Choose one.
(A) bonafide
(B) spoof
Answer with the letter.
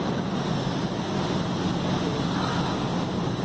A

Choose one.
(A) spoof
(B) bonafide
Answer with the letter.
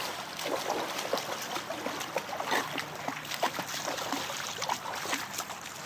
B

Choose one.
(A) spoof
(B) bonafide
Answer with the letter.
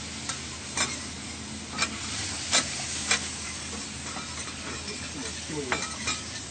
B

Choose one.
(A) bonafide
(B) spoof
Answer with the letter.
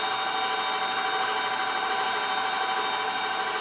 A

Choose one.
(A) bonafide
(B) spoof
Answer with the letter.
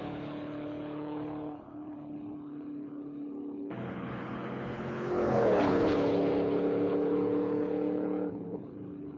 B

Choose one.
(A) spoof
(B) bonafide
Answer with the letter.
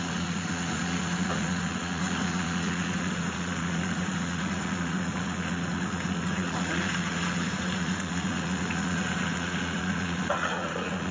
A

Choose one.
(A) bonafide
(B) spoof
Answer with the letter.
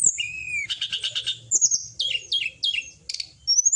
A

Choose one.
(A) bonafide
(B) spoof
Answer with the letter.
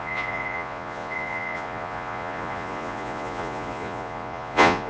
B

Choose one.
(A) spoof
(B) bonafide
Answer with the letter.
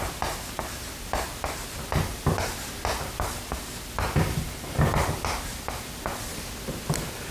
B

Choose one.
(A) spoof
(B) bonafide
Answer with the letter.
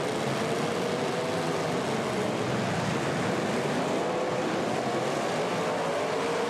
B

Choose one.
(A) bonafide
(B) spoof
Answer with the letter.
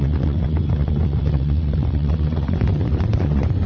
B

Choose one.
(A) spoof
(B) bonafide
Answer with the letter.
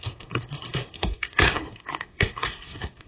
A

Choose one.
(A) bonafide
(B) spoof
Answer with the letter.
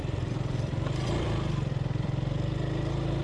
B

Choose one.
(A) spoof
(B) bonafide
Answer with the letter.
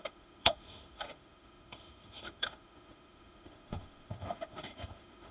A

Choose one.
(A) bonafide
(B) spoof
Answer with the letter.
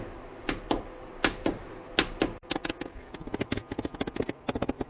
A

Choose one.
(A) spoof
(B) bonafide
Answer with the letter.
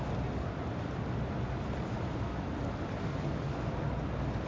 B